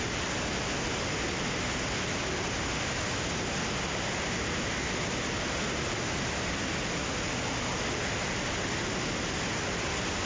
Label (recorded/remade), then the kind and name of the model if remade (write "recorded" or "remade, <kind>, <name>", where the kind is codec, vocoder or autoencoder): recorded